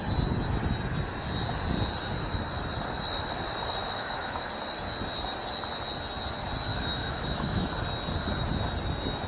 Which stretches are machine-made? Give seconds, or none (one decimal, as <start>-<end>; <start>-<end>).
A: 3.8-4.5; 6.7-7.7

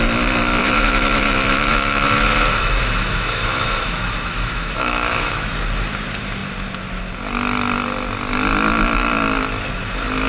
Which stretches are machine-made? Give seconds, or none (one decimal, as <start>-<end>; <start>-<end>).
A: 0.6-5.5